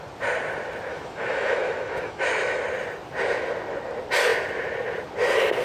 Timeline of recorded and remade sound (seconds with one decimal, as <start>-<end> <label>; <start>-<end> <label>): 0.0-0.9 recorded; 0.9-2.6 remade; 2.6-5.6 recorded